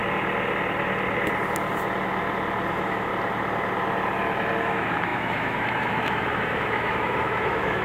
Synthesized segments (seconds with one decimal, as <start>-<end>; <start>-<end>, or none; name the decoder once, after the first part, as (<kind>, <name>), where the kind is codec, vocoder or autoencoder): 2.7-3.1 (autoencoder, DAC-VAE); 4.6-7.8